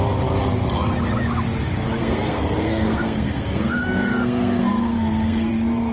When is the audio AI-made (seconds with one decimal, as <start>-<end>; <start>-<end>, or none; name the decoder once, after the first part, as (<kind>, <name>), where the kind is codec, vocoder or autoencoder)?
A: 2.0-5.5 (codec, SNAC)